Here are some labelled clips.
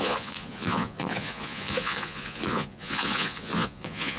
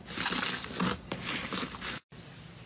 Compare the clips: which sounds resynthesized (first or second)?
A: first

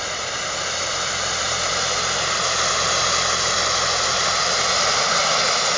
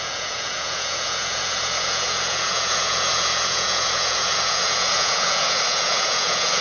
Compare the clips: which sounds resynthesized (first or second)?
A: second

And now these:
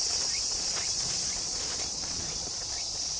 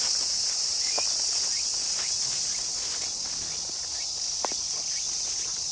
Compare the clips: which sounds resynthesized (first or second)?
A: first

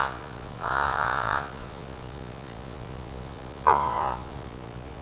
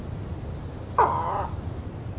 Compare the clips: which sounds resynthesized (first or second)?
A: first